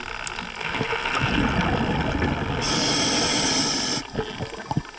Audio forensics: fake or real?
real